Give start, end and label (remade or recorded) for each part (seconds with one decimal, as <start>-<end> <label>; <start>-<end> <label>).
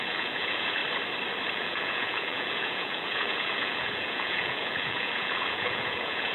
0.0-0.8 remade; 0.8-1.5 recorded; 1.5-6.3 remade